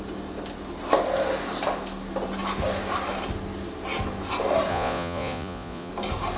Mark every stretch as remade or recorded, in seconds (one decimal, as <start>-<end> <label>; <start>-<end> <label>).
0.0-4.7 recorded; 4.7-5.9 remade; 5.9-6.4 recorded